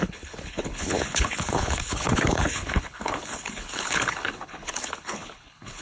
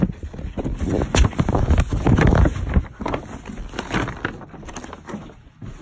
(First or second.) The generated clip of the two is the first